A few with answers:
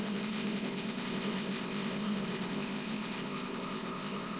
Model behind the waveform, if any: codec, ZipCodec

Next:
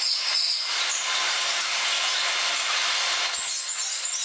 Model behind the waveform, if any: none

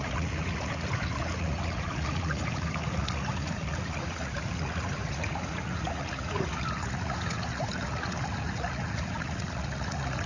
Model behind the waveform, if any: vocoder, Vocos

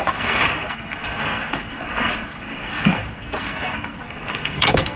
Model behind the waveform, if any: codec, SNAC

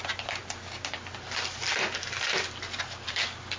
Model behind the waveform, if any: none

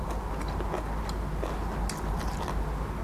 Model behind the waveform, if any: none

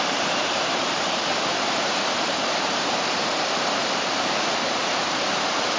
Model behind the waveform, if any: vocoder, BigVGAN v2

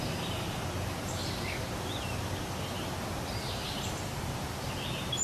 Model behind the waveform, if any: none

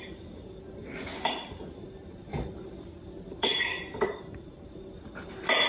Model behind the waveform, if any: none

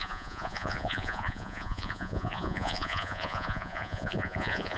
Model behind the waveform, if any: vocoder, Vocos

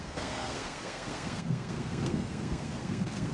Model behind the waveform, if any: codec, SNAC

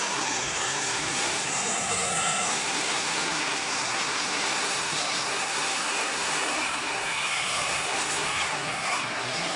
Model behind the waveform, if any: codec, SNAC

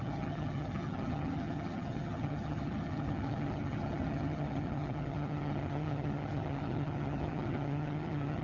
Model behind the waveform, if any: vocoder, HiFi-GAN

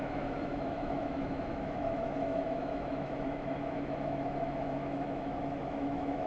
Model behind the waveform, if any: autoencoder, DAC-VAE